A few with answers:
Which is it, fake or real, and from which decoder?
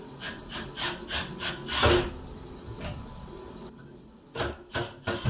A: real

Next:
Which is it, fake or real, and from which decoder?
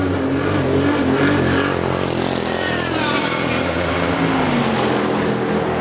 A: real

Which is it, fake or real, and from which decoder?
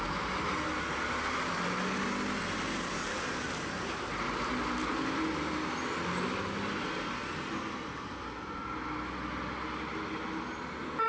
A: real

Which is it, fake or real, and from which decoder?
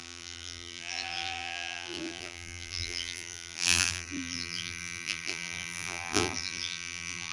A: fake, vocoder, BigVGAN v2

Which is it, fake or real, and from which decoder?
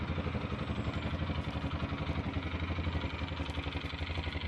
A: real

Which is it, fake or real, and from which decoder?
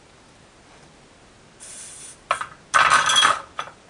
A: real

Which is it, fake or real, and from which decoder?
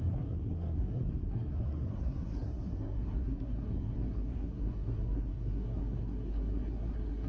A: fake, codec, SNAC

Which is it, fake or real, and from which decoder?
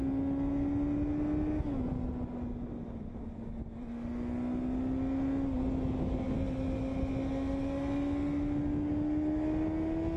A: real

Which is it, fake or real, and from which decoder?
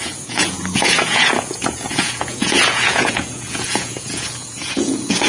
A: fake, vocoder, Vocos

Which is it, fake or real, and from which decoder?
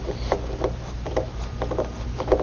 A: real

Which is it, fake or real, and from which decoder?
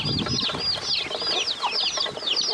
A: real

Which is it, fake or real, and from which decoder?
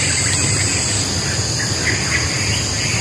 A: real